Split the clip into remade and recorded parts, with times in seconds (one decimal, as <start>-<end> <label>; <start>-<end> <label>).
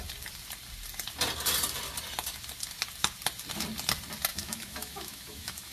0.0-4.3 recorded; 4.3-5.7 remade